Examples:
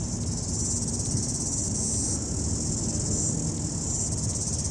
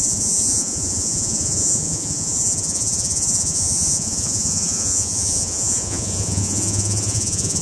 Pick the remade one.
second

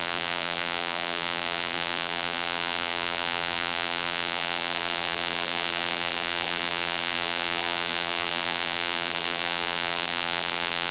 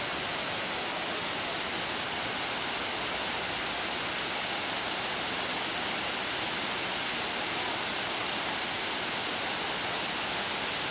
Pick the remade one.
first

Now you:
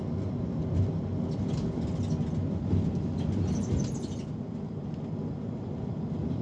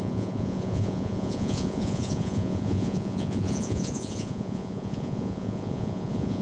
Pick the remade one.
second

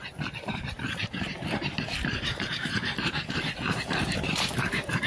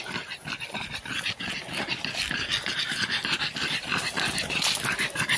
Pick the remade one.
first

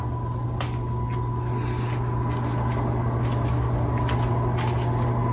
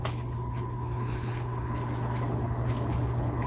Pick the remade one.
second